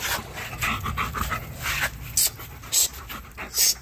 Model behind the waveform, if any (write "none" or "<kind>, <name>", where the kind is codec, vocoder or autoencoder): none